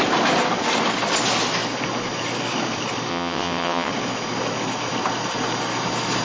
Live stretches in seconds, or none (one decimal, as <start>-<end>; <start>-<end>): 0.0-3.1; 3.9-6.2